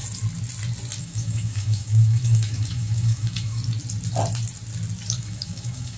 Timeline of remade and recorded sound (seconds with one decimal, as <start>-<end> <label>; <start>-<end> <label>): 0.0-1.0 recorded; 1.0-3.6 remade; 3.6-5.2 recorded; 5.2-6.0 remade